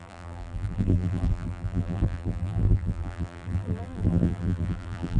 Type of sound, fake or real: fake